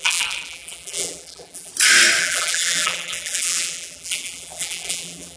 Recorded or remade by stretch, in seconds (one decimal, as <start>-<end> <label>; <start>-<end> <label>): 0.0-1.7 remade; 1.7-2.2 recorded; 2.2-5.4 remade